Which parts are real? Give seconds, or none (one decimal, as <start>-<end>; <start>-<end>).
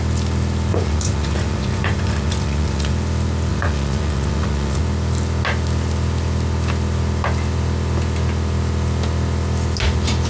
0.0-0.7; 2.9-3.5; 4.8-10.3